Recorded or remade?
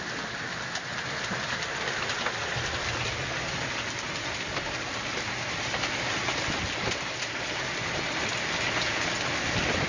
recorded